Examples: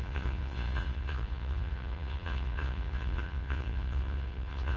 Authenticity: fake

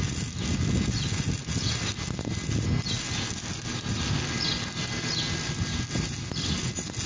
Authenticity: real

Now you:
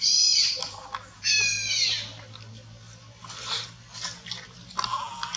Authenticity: real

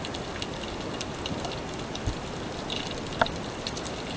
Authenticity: real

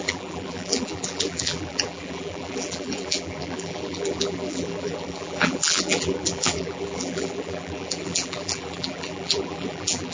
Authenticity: fake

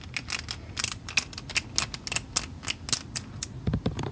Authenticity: real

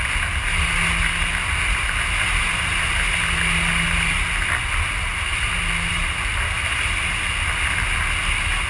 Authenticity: real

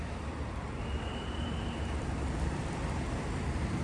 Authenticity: fake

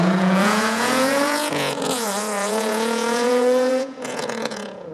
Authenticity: fake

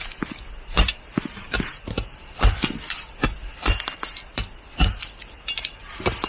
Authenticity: real